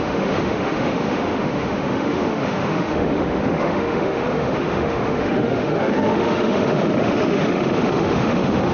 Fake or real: fake